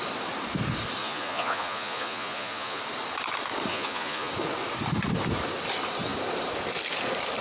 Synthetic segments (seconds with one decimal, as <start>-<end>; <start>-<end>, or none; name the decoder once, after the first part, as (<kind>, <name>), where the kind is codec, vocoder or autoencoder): 1.0-2.8 (vocoder, Vocos); 3.7-4.3